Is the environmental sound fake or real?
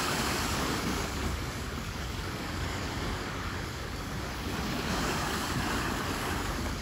fake